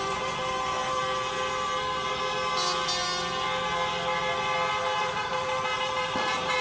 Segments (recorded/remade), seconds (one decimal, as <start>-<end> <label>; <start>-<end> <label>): 0.0-1.0 remade; 1.0-5.0 recorded; 5.0-6.6 remade